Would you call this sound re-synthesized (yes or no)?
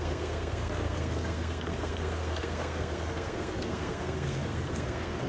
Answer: yes